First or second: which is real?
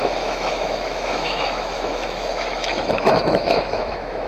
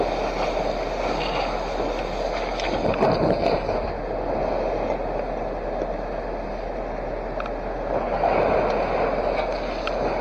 second